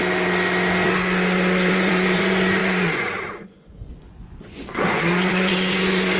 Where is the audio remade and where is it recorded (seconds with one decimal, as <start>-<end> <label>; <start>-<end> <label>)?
0.0-1.7 recorded; 1.7-6.2 remade